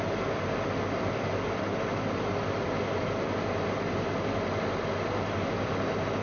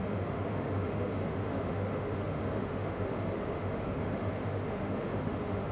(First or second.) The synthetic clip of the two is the second